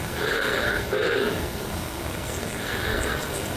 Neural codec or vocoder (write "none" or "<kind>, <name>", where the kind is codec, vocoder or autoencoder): codec, SNAC